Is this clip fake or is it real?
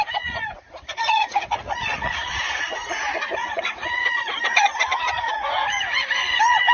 fake